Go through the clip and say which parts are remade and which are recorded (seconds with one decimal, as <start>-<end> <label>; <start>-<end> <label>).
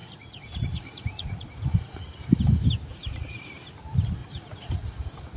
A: 0.0-2.2 remade; 2.2-2.9 recorded; 2.9-3.5 remade; 3.5-4.2 recorded; 4.2-5.4 remade